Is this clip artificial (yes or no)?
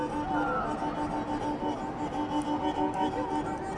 no